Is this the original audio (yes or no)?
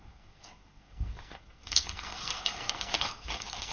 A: no